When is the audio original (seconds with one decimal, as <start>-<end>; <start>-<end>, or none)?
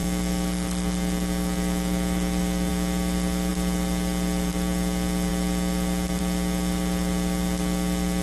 2.7-8.2